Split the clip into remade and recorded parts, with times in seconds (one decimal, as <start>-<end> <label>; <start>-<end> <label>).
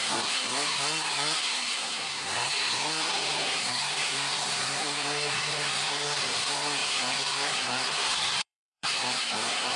0.0-9.8 remade